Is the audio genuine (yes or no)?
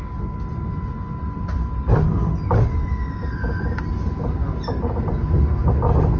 yes